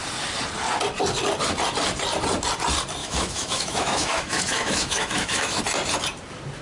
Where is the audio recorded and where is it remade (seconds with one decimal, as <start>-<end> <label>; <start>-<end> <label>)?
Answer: 0.0-3.0 recorded; 3.0-5.6 remade; 5.6-6.6 recorded